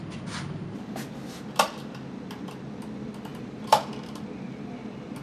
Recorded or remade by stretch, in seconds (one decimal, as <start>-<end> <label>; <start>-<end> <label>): 0.0-3.3 recorded; 3.3-3.9 remade; 3.9-5.2 recorded